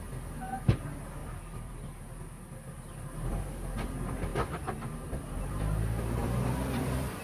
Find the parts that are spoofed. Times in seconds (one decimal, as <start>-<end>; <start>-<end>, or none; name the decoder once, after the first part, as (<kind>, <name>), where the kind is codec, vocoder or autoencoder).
1.2-2.0 (vocoder, BigVGAN v2); 6.2-7.2